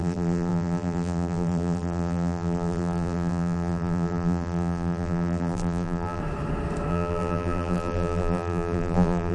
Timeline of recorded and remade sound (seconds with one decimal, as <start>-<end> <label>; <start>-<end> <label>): 0.0-6.2 remade; 6.2-6.9 recorded; 6.9-9.3 remade